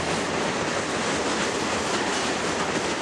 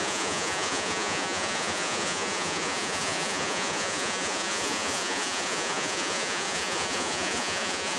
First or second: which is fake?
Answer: second